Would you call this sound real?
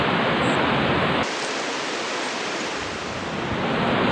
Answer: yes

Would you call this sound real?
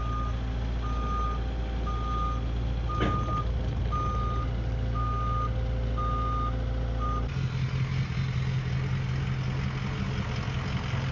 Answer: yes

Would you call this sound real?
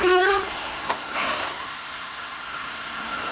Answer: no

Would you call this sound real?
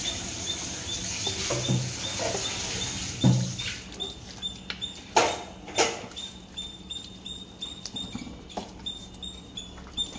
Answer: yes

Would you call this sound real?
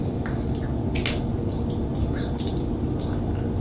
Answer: yes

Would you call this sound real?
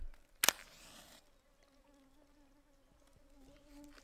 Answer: yes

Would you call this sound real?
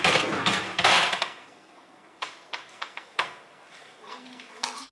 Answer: no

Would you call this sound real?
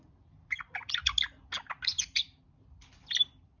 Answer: yes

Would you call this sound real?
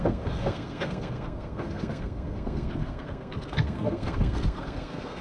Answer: no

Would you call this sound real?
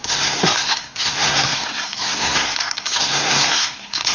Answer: no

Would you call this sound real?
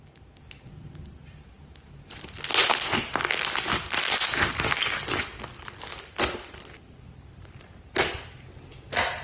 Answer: yes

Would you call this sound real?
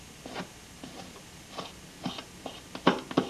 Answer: yes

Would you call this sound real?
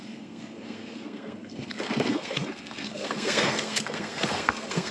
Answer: no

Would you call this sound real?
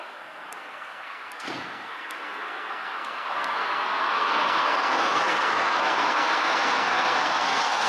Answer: no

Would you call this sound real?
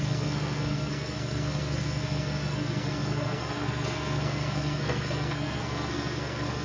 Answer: no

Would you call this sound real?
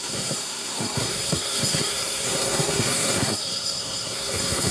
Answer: no